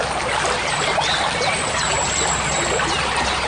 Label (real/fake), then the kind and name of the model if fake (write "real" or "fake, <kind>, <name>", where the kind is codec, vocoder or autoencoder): real